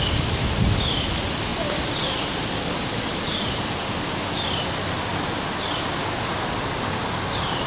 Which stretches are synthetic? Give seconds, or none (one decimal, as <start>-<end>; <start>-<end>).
1.5-4.6

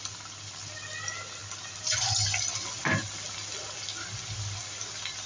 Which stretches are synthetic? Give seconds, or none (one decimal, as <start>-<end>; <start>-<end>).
none

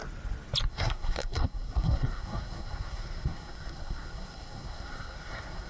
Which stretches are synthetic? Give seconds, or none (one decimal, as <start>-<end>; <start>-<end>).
0.7-5.7

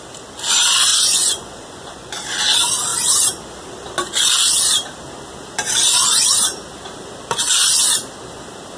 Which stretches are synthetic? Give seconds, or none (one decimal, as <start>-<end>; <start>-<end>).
0.9-2.1

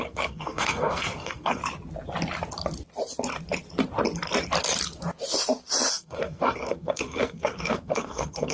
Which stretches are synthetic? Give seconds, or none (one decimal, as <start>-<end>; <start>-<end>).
0.0-1.6; 5.9-8.5